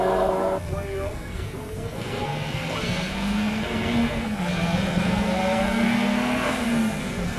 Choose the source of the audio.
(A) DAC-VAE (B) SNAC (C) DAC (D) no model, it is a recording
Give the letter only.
B